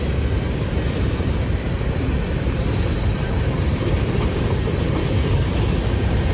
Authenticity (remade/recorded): remade